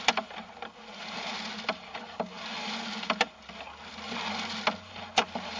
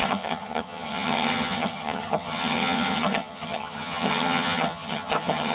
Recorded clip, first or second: first